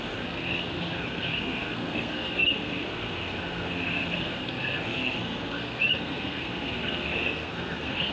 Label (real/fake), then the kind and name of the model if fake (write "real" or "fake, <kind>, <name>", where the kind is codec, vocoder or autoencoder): fake, codec, SNAC